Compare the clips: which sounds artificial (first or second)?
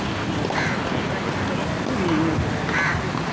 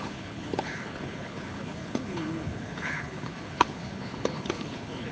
second